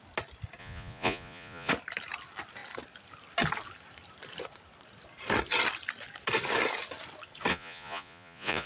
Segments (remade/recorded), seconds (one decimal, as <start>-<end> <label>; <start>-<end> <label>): 0.0-0.6 recorded; 0.6-1.7 remade; 1.7-7.5 recorded; 7.5-8.7 remade